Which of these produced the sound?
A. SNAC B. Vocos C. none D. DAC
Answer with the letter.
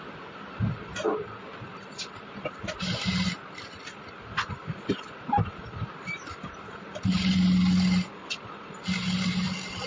C